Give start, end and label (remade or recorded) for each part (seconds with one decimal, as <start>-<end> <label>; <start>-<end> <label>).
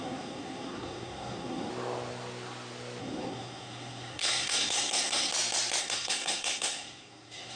0.0-1.7 remade; 1.7-3.0 recorded; 3.0-5.3 remade; 5.3-5.8 recorded; 5.8-7.6 remade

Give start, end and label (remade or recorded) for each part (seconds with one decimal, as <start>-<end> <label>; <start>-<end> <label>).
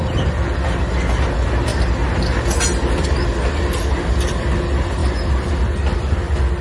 0.0-6.6 recorded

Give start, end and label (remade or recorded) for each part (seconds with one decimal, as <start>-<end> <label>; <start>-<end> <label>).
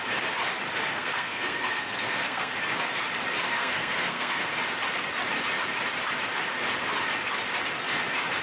0.0-0.9 recorded; 0.9-2.5 remade; 2.5-3.5 recorded; 3.5-4.5 remade; 4.5-8.4 recorded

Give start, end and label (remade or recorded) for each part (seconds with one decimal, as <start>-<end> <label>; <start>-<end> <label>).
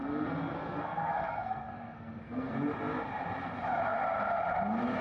0.0-2.6 remade; 2.6-5.0 recorded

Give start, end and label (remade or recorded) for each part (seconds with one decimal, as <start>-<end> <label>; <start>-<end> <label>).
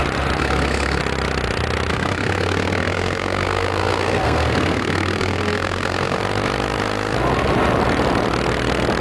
0.0-0.4 recorded; 0.4-1.0 remade; 1.0-1.9 recorded; 1.9-6.2 remade; 6.2-9.0 recorded